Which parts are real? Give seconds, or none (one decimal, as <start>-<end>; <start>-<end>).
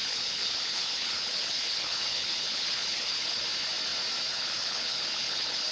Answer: 3.4-4.3